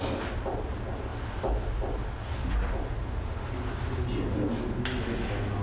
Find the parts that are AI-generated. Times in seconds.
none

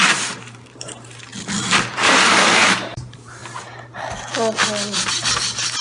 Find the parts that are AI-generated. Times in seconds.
0.0-1.3 (vocoder, BigVGAN v2); 2.0-3.4

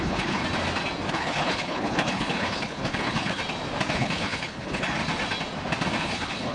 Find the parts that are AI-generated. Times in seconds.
0.0-0.4 (codec, HILCodec); 1.1-3.4; 3.9-5.0; 6.0-6.5

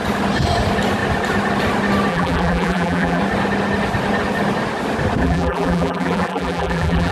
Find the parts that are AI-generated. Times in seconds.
2.1-3.2 (vocoder, BigVGAN v2); 5.2-7.1

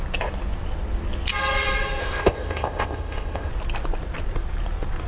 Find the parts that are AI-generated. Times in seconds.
2.0-3.5 (codec, ZipCodec)